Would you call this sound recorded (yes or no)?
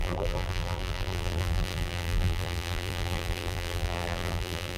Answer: no